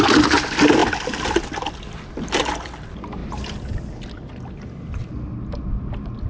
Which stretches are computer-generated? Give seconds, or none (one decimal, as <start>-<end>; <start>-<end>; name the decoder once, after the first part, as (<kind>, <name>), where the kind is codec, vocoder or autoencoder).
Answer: none